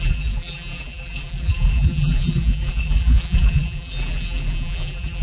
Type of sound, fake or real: fake